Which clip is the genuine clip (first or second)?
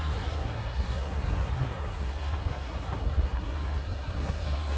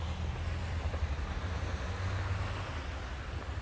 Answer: second